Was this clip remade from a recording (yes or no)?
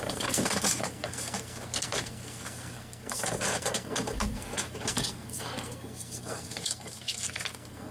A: yes